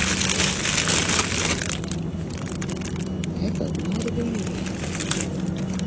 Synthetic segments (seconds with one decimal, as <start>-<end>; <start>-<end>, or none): none